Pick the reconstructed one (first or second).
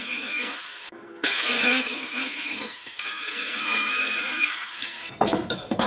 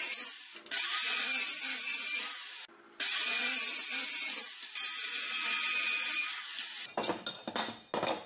first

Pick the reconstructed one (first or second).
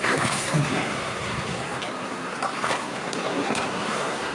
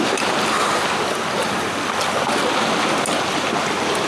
first